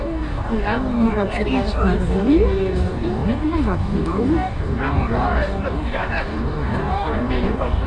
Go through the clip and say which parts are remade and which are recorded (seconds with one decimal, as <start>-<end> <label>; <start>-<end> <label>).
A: 0.0-7.9 remade